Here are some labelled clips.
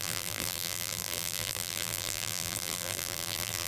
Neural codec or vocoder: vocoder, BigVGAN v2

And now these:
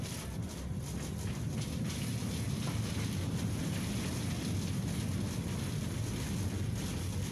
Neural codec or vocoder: none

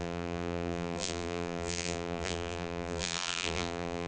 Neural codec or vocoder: vocoder, BigVGAN v2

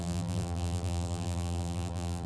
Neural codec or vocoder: vocoder, BigVGAN v2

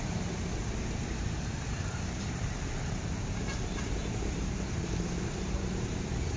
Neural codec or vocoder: vocoder, BigVGAN v2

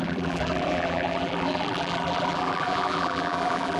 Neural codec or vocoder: vocoder, BigVGAN v2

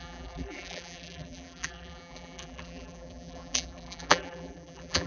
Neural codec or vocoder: vocoder, BigVGAN v2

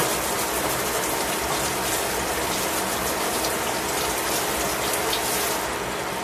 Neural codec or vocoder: vocoder, BigVGAN v2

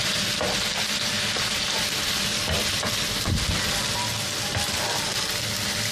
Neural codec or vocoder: none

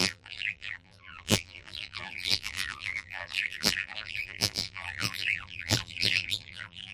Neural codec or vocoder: vocoder, BigVGAN v2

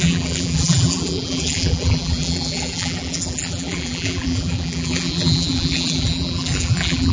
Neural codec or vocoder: vocoder, BigVGAN v2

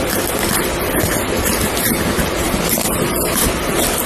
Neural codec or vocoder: none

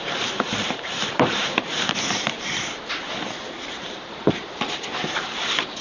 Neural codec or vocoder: vocoder, BigVGAN v2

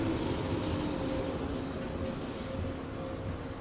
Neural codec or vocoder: none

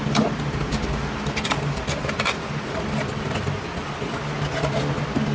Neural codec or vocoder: none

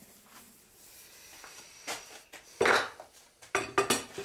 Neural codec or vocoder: none